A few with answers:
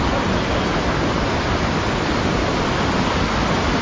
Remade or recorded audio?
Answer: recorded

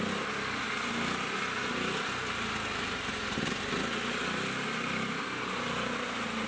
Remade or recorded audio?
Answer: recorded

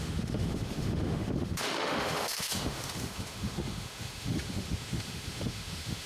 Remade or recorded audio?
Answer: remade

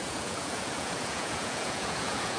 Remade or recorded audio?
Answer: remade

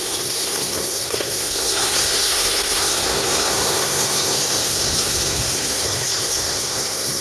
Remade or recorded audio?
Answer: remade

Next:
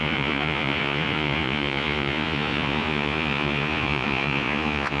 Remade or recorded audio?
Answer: remade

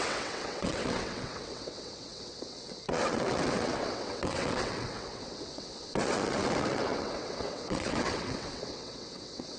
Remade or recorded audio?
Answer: remade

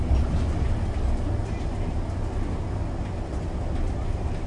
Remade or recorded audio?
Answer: recorded